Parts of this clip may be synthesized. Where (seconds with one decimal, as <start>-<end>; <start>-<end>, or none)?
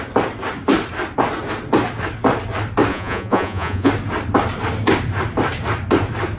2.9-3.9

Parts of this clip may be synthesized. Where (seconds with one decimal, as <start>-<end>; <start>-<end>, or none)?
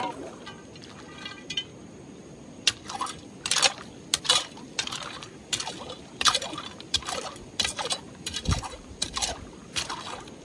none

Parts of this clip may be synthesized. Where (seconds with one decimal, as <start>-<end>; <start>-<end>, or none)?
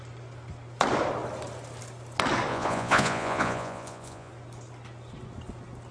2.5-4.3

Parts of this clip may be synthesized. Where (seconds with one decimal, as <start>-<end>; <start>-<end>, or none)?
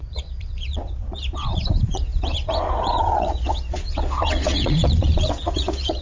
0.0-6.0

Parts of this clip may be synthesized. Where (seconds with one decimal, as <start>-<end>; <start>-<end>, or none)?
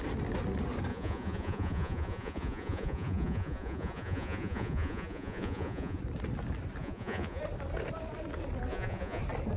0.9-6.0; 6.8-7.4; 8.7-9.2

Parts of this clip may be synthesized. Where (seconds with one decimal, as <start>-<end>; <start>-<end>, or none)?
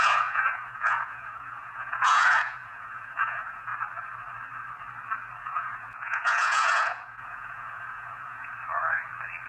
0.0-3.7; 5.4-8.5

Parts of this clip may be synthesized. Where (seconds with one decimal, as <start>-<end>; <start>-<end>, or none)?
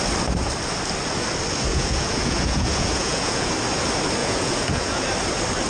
1.7-3.5; 4.2-5.0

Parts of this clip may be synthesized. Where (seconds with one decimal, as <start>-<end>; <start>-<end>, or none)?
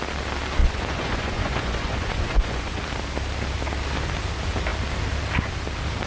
0.6-2.8